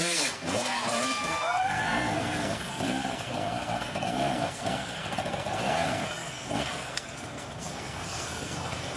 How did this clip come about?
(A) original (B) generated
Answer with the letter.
B